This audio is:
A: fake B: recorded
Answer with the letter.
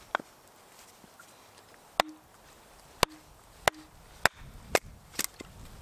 B